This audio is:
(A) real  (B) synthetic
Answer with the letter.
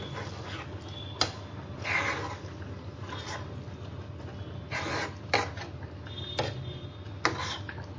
A